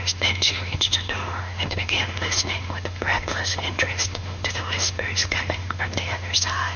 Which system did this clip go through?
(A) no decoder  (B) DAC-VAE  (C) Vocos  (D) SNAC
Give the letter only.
B